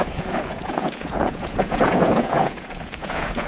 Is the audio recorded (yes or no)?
no